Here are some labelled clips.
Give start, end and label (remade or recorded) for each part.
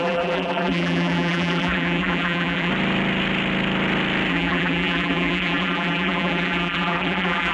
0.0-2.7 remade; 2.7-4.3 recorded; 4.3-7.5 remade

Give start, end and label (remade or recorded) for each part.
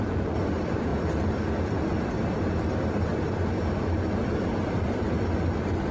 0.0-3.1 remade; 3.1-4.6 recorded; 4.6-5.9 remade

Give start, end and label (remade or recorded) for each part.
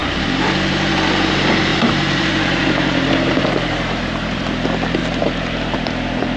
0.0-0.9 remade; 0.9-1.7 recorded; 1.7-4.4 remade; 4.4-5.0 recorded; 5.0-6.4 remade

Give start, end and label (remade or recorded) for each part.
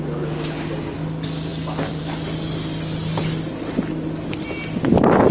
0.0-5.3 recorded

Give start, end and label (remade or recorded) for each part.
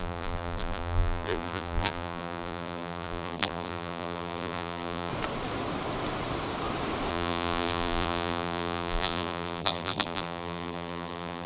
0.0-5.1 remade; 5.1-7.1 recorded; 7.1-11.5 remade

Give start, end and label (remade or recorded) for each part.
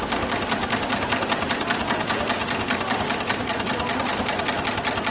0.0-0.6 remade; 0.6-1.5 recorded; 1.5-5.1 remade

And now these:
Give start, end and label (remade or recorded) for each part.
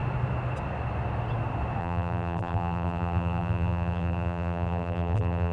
0.0-1.8 recorded; 1.8-5.5 remade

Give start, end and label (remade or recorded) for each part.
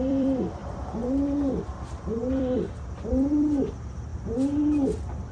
0.0-4.1 remade; 4.1-5.3 recorded